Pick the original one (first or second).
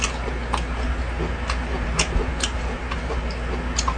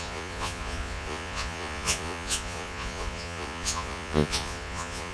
first